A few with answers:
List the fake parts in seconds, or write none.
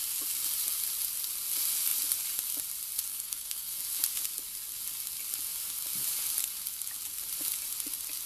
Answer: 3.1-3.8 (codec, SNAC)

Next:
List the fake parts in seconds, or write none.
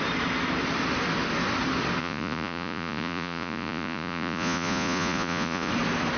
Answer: 2.0-5.7 (vocoder, Vocos)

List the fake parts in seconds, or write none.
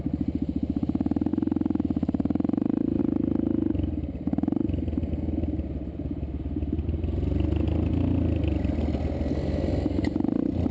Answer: none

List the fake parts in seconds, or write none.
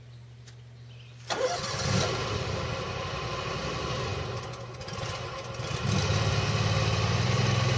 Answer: none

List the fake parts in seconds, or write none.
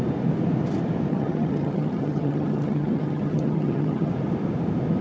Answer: 1.1-4.1 (vocoder, HiFi-GAN)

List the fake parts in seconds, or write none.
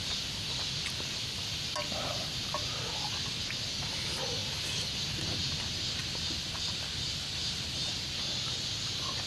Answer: none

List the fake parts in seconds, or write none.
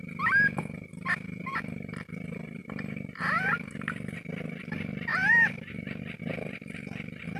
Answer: 2.6-3.7 (vocoder, BigVGAN v2); 5.1-6.0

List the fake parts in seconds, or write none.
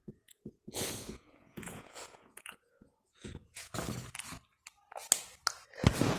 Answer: 0.0-3.7 (vocoder, Vocos)